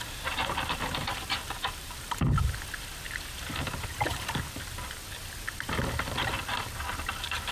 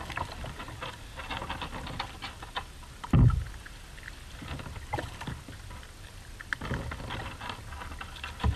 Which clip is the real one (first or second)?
second